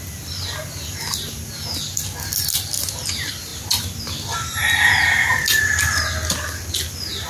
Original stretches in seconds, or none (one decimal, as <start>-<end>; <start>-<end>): 0.0-7.3